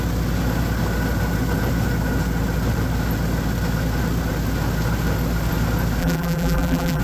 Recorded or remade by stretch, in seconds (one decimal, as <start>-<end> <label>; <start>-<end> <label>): 0.0-6.0 recorded; 6.0-7.0 remade